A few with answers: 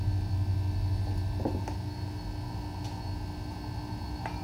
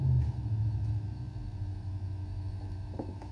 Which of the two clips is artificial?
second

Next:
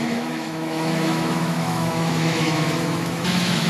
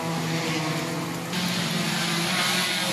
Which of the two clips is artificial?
first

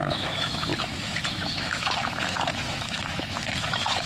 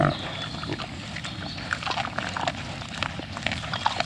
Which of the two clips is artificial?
first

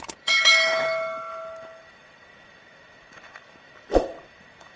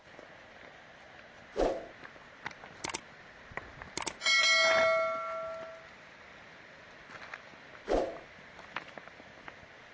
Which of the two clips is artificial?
first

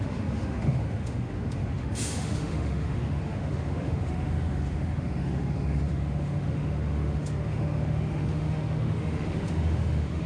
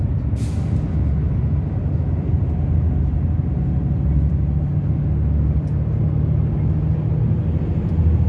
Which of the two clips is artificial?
first